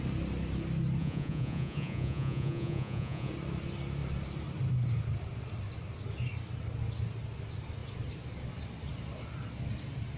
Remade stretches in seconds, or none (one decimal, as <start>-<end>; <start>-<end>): 1.0-3.3